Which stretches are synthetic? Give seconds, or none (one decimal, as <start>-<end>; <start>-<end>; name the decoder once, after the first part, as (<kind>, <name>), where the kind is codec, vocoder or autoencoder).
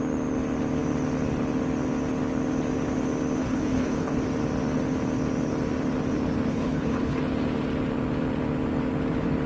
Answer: 3.4-4.2 (codec, HILCodec); 6.5-7.2